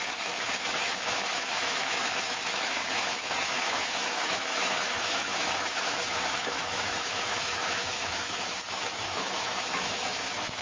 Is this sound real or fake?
fake